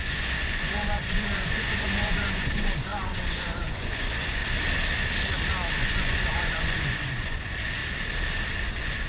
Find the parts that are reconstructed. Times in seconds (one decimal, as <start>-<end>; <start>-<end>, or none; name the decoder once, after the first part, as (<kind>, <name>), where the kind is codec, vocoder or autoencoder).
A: 0.0-4.4 (vocoder, Vocos); 5.7-7.8; 8.7-9.1